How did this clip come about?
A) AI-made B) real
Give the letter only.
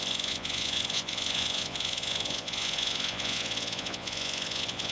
A